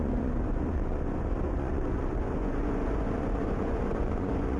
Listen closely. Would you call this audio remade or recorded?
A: remade